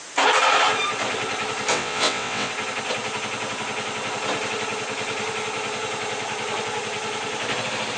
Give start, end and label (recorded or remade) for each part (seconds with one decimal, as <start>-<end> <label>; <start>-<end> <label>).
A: 0.0-1.7 recorded; 1.7-2.5 remade; 2.5-8.0 recorded